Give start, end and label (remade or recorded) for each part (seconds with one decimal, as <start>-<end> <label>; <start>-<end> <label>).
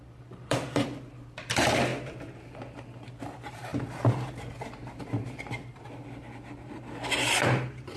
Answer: 0.0-3.7 remade; 3.7-4.5 recorded; 4.5-8.0 remade